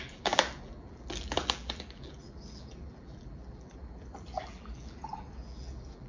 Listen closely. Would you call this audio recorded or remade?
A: remade